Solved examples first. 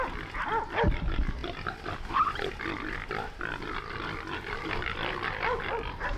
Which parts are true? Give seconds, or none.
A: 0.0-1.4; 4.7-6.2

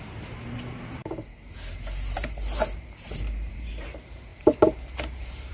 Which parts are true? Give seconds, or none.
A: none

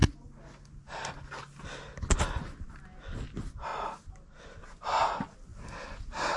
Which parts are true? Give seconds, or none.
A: 0.0-6.4